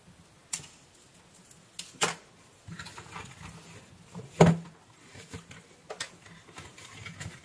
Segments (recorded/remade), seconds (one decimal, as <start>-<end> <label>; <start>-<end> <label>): 0.0-7.4 recorded